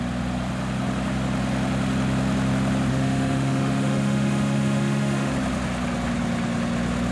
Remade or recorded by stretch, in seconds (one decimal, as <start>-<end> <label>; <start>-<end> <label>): 0.0-2.9 recorded; 2.9-5.3 remade; 5.3-7.1 recorded